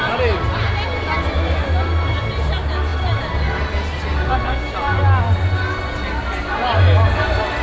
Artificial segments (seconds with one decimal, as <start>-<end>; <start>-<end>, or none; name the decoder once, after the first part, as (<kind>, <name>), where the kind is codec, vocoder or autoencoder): none

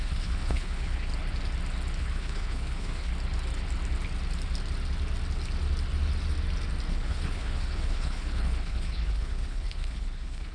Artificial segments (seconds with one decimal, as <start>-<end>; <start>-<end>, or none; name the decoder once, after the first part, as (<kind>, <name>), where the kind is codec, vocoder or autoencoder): 0.0-1.1 (codec, HILCodec); 2.0-3.1; 6.9-10.5